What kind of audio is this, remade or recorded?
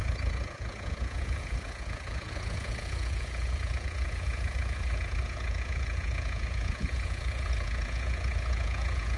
remade